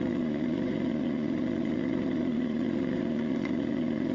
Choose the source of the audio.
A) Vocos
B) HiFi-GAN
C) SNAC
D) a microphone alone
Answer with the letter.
A